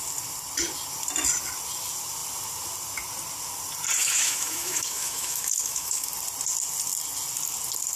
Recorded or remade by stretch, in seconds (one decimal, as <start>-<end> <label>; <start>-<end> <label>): 0.0-4.0 recorded; 4.0-6.1 remade; 6.1-8.0 recorded